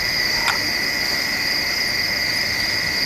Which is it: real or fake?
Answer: real